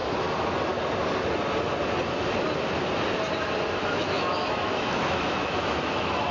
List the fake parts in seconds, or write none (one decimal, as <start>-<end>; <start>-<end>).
3.8-6.3